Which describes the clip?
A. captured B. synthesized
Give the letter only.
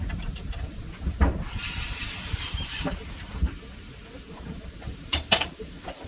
B